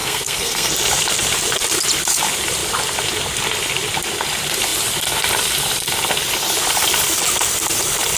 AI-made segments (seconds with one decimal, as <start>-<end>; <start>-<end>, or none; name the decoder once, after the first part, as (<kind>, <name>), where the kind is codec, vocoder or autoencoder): 0.0-0.7 (codec, SNAC)